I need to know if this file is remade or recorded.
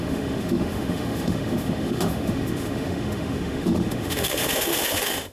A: remade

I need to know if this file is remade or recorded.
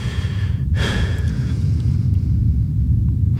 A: remade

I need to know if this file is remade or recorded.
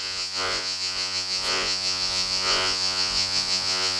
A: remade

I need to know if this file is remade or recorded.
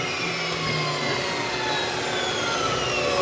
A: recorded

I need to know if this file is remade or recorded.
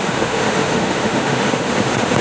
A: remade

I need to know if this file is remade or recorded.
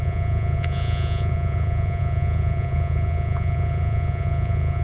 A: remade